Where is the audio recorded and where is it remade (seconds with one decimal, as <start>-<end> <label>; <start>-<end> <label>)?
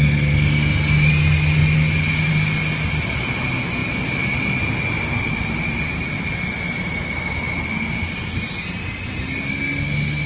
0.0-10.3 recorded